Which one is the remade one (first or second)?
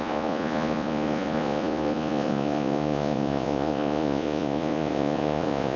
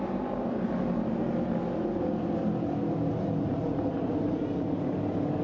first